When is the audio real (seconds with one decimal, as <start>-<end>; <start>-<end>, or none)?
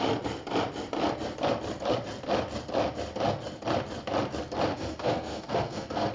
0.0-4.7